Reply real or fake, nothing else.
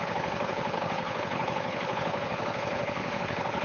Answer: fake